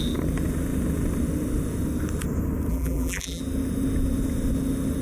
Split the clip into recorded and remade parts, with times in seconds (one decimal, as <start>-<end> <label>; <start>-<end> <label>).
0.0-2.7 recorded; 2.7-3.4 remade; 3.4-5.0 recorded